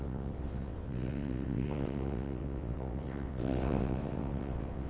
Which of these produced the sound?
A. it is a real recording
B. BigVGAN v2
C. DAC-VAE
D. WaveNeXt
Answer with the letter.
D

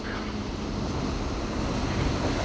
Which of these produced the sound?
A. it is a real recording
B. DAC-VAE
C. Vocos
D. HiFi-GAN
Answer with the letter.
A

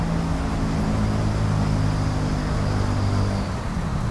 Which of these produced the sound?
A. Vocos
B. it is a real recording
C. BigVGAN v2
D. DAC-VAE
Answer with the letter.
B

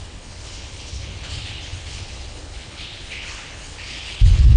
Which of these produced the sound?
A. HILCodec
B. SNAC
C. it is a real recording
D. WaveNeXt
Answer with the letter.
A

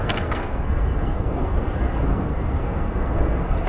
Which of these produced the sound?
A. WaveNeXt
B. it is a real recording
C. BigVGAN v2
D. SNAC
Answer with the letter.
D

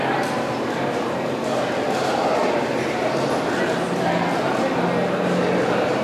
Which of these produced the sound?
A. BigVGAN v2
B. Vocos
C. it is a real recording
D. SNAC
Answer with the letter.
C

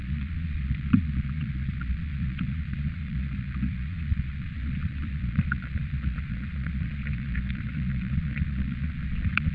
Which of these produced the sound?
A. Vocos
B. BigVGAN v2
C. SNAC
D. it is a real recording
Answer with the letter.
A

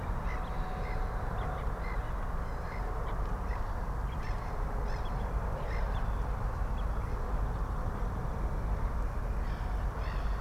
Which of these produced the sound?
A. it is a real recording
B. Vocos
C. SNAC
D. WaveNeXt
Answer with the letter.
A